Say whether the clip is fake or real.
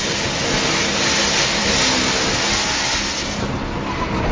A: real